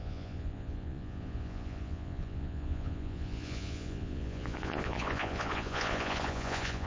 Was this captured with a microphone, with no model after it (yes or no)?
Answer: no